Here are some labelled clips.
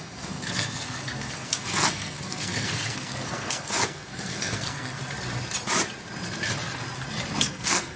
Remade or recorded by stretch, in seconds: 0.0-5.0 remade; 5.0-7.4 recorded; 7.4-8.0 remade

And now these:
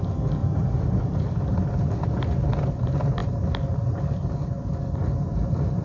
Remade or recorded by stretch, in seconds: 0.0-0.4 recorded; 0.4-1.0 remade; 1.0-5.8 recorded

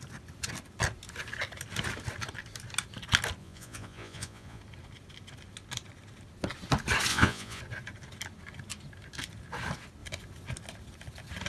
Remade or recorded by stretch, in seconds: 0.0-3.4 recorded; 3.4-4.6 remade; 4.6-7.1 recorded; 7.1-7.6 remade; 7.6-11.5 recorded

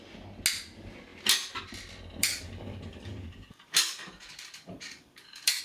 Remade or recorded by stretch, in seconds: 0.0-2.2 recorded; 2.2-5.6 remade

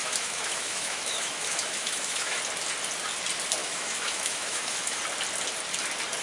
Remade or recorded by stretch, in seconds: 0.0-2.4 remade; 2.4-3.6 recorded; 3.6-5.0 remade; 5.0-6.2 recorded

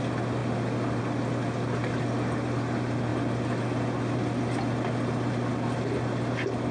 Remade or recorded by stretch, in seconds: 0.0-6.7 recorded

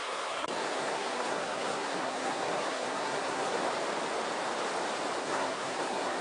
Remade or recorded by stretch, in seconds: 0.0-3.7 remade; 3.7-5.2 recorded; 5.2-6.2 remade

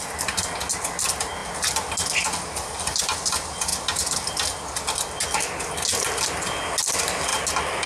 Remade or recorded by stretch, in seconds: 0.0-7.9 recorded